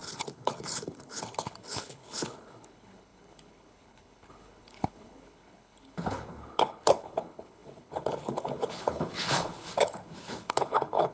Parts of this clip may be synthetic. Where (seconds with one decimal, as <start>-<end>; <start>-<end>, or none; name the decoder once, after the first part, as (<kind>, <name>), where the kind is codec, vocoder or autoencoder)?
0.0-11.1 (codec, HILCodec)